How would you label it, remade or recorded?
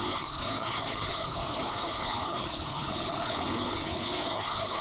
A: remade